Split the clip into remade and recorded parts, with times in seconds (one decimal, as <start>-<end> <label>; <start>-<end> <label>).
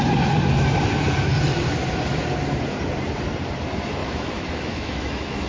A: 0.0-4.0 recorded; 4.0-5.5 remade